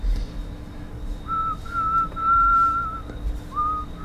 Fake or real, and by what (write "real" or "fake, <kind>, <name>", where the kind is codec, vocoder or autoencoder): real